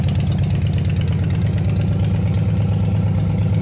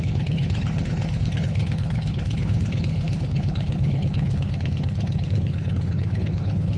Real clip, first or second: first